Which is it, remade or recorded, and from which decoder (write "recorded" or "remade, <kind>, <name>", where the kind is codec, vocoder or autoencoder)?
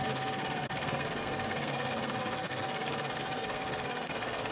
remade, codec, SNAC